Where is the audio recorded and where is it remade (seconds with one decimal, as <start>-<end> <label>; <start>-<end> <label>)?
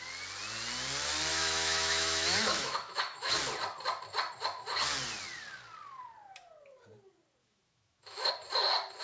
0.0-1.3 recorded; 1.3-3.3 remade; 3.3-7.4 recorded; 7.4-8.3 remade; 8.3-9.0 recorded